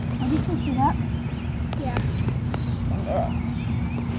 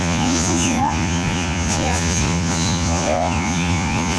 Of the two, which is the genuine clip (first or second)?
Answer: first